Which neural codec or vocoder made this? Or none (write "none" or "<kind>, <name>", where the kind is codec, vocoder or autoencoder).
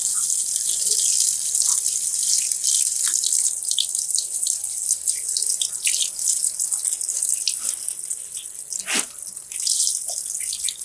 none